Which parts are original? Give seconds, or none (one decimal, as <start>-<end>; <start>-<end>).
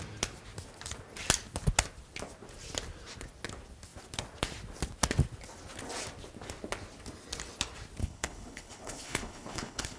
0.0-8.0